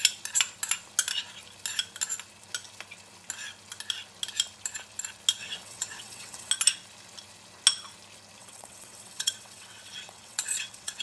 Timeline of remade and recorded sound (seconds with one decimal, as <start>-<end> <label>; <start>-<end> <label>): 0.0-5.4 recorded; 5.4-6.5 remade; 6.5-8.4 recorded; 8.4-11.0 remade